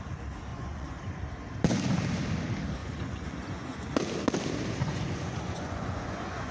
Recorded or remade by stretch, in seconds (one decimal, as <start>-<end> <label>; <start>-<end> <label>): 0.0-0.5 recorded; 0.5-1.0 remade; 1.0-2.8 recorded; 2.8-4.0 remade; 4.0-4.8 recorded; 4.8-6.5 remade